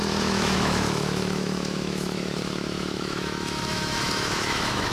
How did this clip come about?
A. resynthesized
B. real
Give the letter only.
A